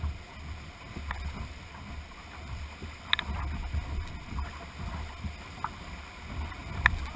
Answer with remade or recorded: recorded